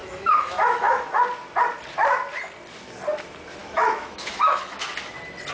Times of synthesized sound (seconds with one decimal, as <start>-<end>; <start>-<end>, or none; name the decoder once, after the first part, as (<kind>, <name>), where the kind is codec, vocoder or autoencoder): 0.0-1.2 (autoencoder, DAC-VAE); 3.6-4.9